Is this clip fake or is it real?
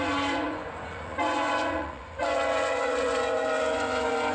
fake